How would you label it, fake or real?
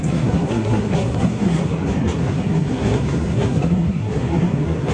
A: fake